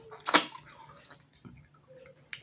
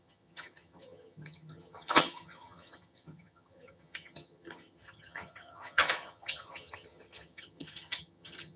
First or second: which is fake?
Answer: second